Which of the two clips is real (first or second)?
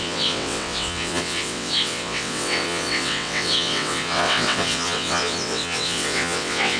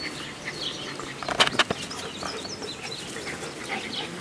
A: second